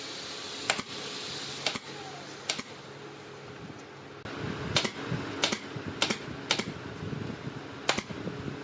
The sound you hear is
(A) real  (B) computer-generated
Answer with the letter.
A